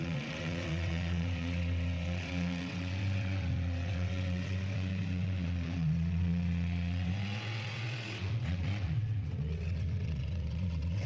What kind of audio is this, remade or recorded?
remade